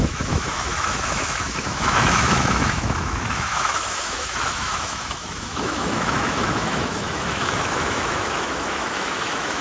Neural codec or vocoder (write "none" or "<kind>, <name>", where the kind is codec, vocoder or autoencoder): autoencoder, DAC-VAE